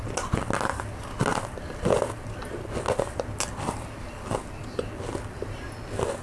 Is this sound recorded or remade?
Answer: recorded